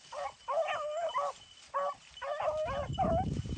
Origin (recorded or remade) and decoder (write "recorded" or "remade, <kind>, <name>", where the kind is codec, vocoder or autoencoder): recorded